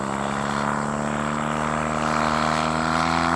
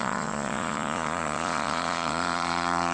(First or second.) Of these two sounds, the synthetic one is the second